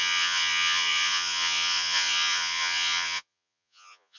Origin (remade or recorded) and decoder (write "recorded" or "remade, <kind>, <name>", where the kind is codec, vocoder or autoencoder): remade, vocoder, Vocos